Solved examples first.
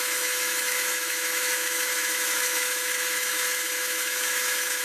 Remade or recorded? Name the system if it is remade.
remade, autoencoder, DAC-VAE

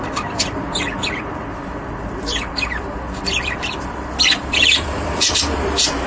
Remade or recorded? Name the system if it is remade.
remade, vocoder, BigVGAN v2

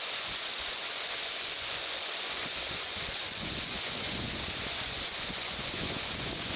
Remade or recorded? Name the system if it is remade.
remade, vocoder, Vocos